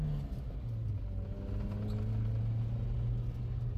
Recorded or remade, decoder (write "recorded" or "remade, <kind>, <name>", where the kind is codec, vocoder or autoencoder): recorded